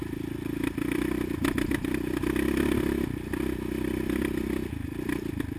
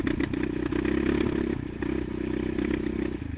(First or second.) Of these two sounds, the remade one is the first